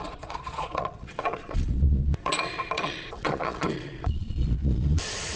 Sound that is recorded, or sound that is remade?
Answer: remade